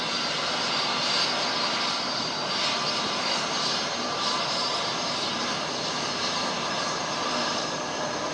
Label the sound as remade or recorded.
remade